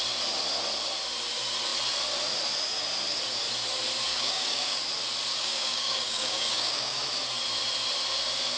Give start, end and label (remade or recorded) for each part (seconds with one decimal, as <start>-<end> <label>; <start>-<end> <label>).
0.0-4.1 recorded; 4.1-4.8 remade; 4.8-5.3 recorded; 5.3-7.0 remade; 7.0-8.6 recorded